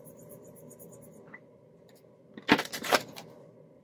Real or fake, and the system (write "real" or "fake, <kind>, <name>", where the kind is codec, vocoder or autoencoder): real